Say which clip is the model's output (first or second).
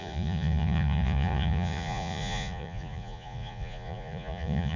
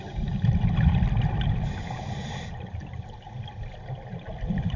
first